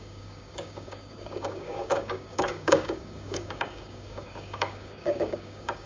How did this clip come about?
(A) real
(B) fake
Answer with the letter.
B